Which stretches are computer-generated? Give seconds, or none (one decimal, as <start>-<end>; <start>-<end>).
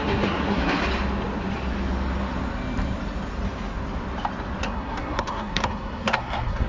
0.0-0.8; 4.6-6.7